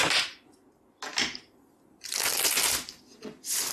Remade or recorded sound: recorded